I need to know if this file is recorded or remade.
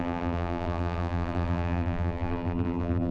remade